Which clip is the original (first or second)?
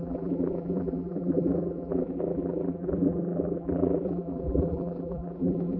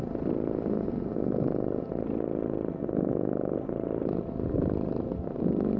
second